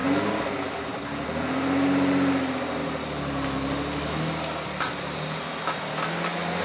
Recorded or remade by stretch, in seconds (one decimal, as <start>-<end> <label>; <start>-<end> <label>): 0.0-6.6 recorded